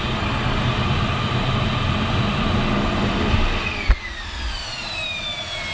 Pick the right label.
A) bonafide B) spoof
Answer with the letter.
A